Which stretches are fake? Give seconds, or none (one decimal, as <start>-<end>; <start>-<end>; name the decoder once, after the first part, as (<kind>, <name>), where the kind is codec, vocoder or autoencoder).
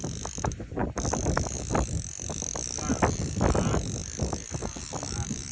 0.0-0.8 (vocoder, BigVGAN v2); 1.6-2.1; 2.9-4.0; 4.9-5.5